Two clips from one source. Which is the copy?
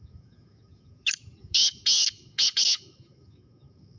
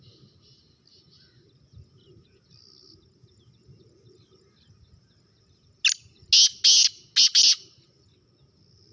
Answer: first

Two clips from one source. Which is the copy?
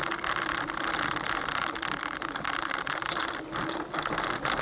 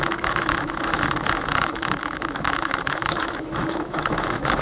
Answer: second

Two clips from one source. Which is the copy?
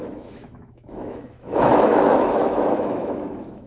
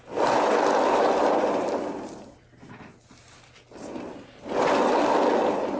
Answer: first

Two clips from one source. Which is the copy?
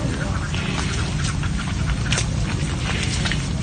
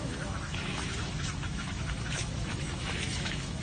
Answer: second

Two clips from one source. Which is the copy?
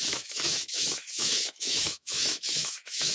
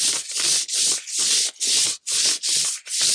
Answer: first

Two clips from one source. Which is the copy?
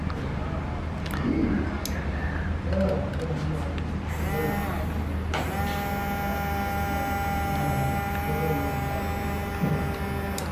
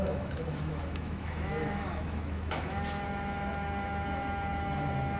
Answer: second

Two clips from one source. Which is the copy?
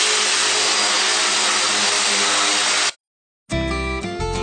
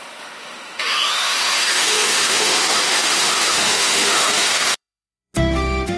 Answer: second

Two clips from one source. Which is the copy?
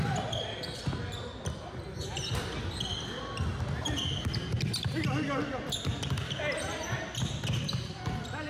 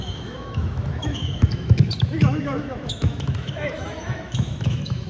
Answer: second